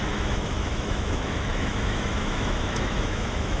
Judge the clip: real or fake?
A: fake